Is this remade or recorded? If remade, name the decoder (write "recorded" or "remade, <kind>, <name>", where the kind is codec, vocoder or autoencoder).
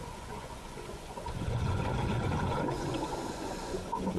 remade, vocoder, Vocos